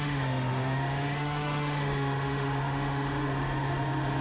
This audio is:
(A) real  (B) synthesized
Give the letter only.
B